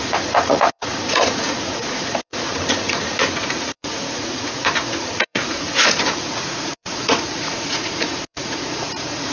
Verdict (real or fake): fake